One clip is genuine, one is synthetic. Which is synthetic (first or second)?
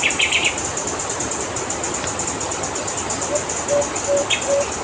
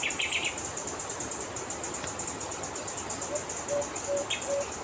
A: first